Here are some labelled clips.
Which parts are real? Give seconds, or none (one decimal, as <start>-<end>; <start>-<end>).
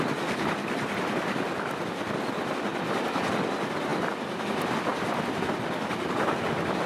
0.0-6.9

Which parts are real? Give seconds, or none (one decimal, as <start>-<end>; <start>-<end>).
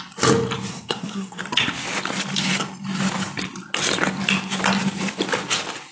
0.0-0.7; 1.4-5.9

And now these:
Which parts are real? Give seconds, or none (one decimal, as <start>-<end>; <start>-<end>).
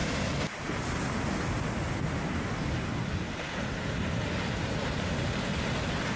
0.0-6.2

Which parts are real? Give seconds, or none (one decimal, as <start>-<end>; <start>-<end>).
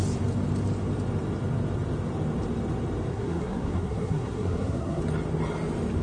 0.0-3.1; 5.0-6.0